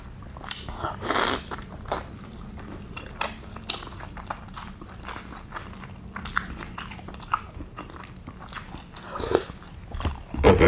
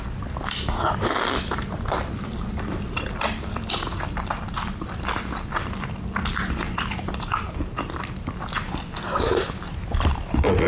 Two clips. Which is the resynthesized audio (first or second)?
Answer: second